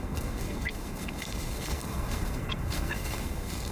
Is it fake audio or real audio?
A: fake